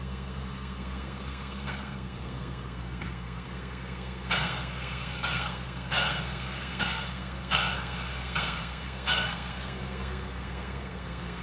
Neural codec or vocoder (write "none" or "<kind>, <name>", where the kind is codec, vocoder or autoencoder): codec, SNAC